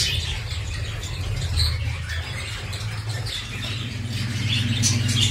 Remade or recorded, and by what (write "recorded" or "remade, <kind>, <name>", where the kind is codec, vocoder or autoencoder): recorded